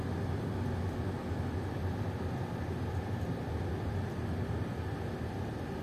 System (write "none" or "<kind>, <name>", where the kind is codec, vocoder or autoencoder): none